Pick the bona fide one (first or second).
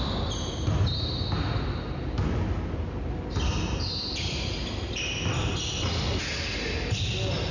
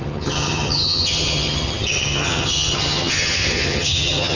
first